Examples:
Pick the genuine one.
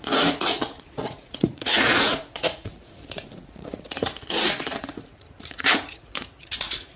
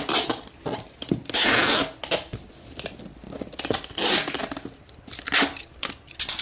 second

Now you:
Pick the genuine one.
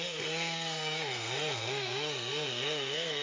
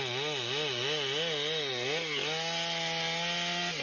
second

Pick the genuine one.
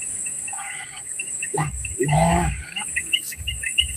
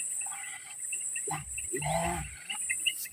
second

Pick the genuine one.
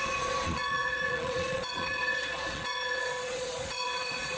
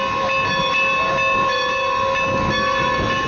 second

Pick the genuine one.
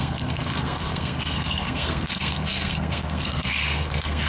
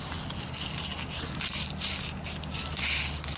second